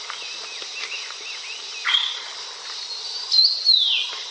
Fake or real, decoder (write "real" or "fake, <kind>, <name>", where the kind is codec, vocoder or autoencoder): real